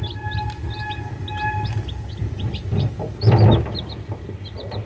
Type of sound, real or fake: real